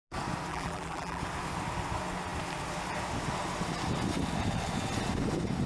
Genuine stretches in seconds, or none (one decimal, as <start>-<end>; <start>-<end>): 0.0-0.5; 1.2-5.7